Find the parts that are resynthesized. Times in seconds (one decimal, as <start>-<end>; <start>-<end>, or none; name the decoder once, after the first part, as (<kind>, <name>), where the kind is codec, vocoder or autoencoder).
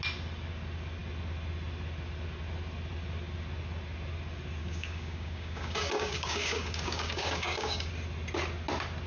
4.6-7.9 (codec, DAC)